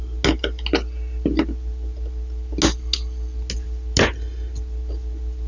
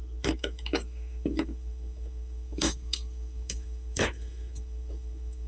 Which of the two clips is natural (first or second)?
first